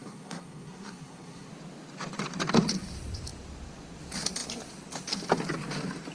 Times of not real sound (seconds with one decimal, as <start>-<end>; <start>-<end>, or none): 0.0-1.5